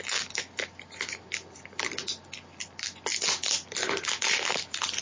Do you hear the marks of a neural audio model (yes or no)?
no